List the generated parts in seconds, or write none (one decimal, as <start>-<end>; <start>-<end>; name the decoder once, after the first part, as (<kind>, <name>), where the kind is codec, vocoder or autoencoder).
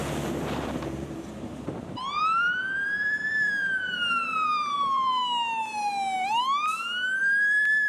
0.0-5.2 (vocoder, BigVGAN v2); 7.2-7.9